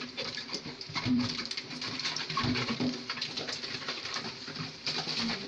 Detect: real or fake fake